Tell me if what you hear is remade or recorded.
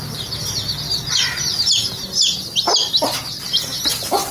recorded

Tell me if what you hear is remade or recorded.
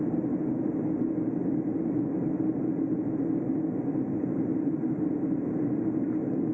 recorded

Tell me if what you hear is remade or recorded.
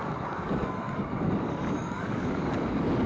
remade